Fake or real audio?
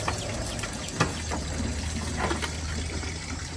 real